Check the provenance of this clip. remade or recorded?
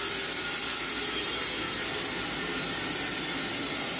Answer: recorded